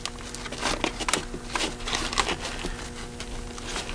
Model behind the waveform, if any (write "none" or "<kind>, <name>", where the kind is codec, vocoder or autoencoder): none